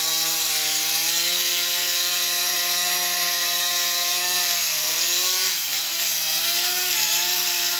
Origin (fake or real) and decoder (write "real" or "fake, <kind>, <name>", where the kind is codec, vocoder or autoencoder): fake, codec, SNAC